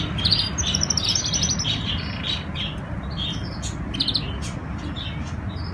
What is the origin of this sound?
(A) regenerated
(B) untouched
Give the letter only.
B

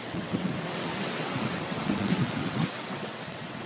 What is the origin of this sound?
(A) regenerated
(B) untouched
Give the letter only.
A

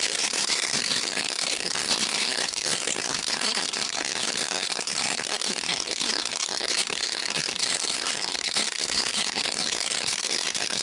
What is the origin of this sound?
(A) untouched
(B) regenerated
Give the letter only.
B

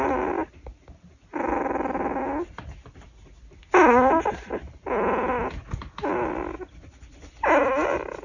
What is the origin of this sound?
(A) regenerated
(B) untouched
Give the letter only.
B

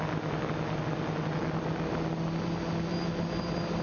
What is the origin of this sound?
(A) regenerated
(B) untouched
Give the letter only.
B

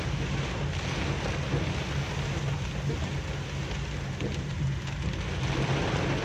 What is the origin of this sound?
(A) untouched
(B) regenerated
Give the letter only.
A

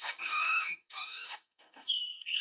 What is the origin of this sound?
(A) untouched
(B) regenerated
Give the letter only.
B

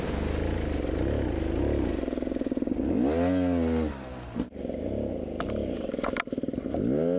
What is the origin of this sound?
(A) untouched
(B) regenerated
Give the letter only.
A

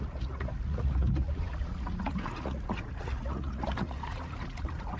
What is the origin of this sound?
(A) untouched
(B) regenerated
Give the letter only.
B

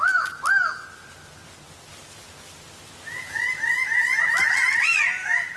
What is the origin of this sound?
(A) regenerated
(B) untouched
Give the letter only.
B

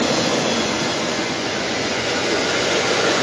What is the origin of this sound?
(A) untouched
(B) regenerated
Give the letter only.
B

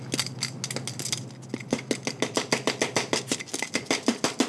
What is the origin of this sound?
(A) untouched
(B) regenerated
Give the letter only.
A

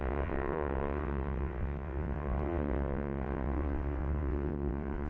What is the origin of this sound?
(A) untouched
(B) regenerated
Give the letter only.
B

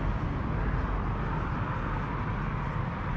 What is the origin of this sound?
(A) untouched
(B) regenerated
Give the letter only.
A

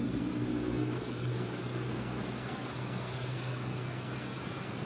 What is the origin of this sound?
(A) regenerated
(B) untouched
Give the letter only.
A